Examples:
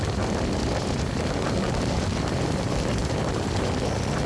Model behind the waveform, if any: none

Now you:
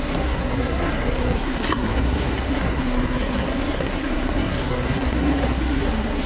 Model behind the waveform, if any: codec, SNAC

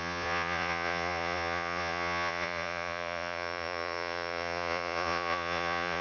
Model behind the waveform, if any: vocoder, Vocos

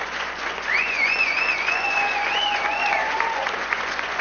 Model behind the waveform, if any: vocoder, Vocos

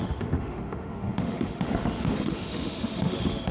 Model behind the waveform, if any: autoencoder, DAC-VAE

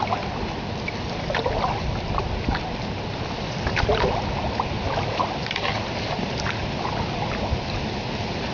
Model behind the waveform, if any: none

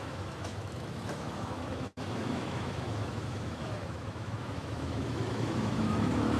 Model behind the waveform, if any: autoencoder, DAC-VAE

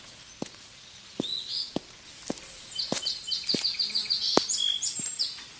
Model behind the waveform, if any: none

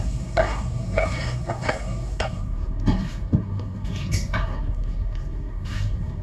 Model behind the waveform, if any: codec, SNAC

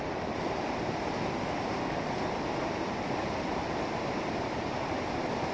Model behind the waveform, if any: none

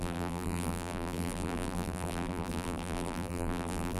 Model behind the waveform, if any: vocoder, BigVGAN v2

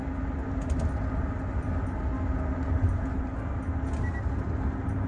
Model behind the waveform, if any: none